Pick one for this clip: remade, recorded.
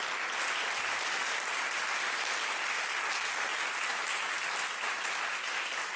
recorded